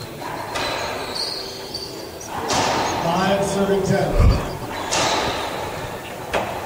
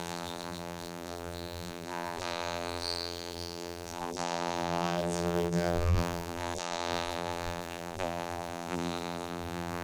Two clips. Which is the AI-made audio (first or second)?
second